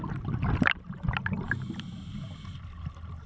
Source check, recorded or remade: recorded